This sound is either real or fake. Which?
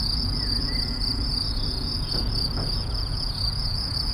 fake